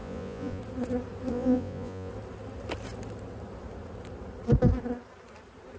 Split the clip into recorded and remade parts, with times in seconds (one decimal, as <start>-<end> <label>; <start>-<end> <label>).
0.0-0.6 remade; 0.6-1.3 recorded; 1.3-2.1 remade; 2.1-5.8 recorded